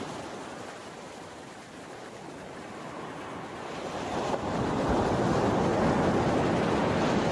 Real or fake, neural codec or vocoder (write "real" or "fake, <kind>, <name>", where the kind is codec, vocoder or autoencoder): real